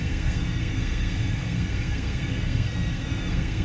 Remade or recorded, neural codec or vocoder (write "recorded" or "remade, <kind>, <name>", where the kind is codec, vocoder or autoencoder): remade, codec, SNAC